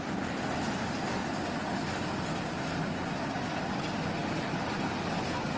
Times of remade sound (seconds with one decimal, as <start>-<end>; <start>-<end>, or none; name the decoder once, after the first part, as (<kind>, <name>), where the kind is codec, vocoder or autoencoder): 4.2-5.6 (vocoder, BigVGAN v2)